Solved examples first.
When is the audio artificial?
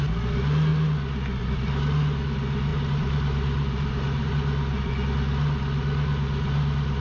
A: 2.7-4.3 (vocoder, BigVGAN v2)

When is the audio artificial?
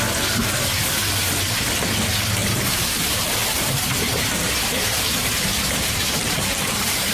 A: 2.4-7.1 (vocoder, BigVGAN v2)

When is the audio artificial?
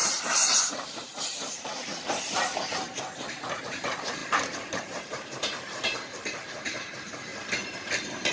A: 0.6-1.9 (vocoder, BigVGAN v2); 2.7-7.3